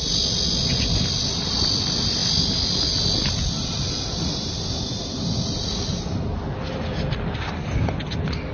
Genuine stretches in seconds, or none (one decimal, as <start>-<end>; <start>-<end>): 0.0-8.5